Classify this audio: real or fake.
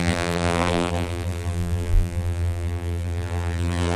fake